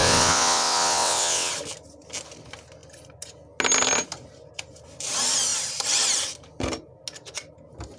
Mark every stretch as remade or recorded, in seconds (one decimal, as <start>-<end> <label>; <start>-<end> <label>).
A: 0.0-1.5 remade; 1.5-8.0 recorded